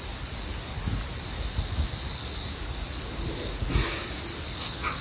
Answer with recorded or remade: recorded